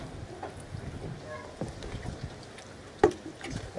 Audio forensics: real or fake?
real